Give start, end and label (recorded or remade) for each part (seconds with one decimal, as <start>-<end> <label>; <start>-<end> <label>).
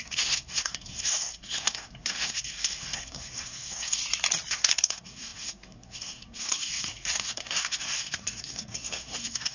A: 0.0-4.0 remade; 4.0-4.5 recorded; 4.5-9.5 remade